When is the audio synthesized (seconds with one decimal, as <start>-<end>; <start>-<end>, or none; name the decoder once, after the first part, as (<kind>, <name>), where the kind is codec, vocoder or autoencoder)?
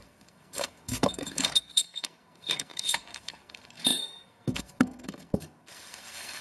0.0-6.4 (codec, SNAC)